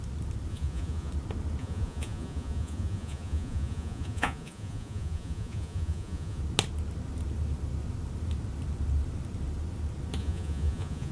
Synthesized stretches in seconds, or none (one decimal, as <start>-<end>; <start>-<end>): 0.5-1.1; 1.6-6.4; 10.2-11.1